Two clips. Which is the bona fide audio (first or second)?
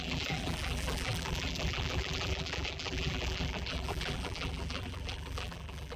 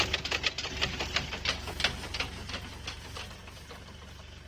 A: second